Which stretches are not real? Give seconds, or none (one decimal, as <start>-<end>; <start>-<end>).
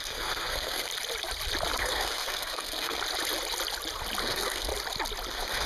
0.0-0.9; 1.8-3.0; 4.2-4.7; 5.3-5.7